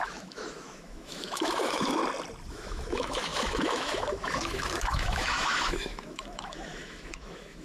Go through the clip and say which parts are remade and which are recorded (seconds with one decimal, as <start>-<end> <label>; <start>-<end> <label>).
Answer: 0.0-2.0 remade; 2.0-2.5 recorded; 2.5-7.6 remade